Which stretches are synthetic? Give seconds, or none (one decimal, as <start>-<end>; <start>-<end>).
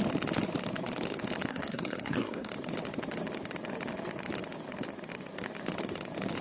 1.5-2.5